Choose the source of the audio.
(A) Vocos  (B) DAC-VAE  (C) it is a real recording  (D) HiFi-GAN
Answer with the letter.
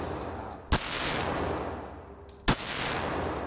C